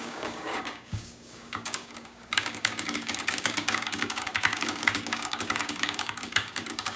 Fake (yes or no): yes